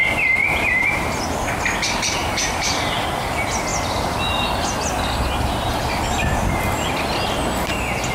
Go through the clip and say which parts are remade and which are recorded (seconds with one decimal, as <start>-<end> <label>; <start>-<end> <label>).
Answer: 0.0-0.4 recorded; 0.4-1.2 remade; 1.2-2.2 recorded; 2.2-3.0 remade; 3.0-8.1 recorded